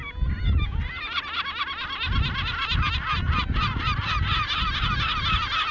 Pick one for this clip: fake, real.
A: real